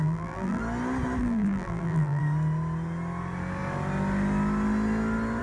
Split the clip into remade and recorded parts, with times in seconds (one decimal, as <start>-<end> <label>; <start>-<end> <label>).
0.0-0.6 remade; 0.6-1.2 recorded; 1.2-2.2 remade; 2.2-5.4 recorded

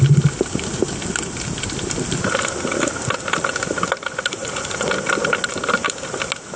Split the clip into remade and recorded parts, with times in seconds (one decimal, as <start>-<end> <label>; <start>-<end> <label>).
0.0-4.4 recorded; 4.4-4.9 remade; 4.9-6.6 recorded

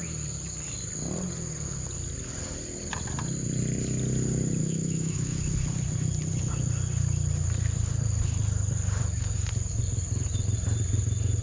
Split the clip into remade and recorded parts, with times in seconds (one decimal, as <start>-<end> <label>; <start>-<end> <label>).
0.0-4.6 recorded; 4.6-5.4 remade; 5.4-11.4 recorded

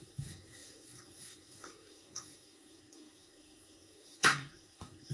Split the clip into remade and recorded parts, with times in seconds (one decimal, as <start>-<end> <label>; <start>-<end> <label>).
0.0-5.1 remade

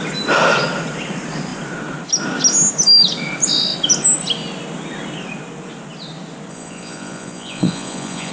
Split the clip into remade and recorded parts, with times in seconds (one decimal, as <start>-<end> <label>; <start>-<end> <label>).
0.0-6.5 recorded; 6.5-8.3 remade

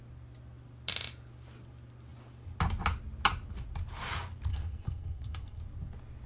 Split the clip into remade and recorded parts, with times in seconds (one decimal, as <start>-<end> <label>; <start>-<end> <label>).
0.0-4.5 recorded; 4.5-5.6 remade; 5.6-6.3 recorded

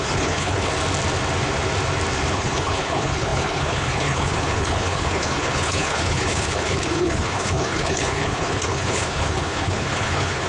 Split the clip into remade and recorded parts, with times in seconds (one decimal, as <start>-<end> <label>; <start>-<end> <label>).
0.0-0.7 remade; 0.7-2.3 recorded; 2.3-10.5 remade

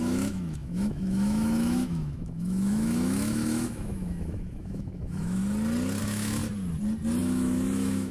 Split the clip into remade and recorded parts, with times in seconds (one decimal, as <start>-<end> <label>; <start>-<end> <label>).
0.0-5.4 remade; 5.4-6.0 recorded; 6.0-6.4 remade; 6.4-7.2 recorded; 7.2-8.1 remade